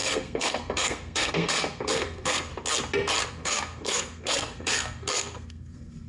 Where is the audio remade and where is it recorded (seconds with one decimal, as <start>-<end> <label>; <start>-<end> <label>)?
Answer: 0.0-2.5 remade; 2.5-3.3 recorded; 3.3-6.1 remade